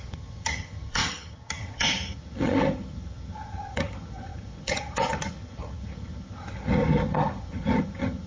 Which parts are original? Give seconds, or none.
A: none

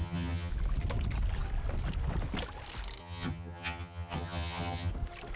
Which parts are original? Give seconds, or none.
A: 0.5-3.0; 4.9-5.4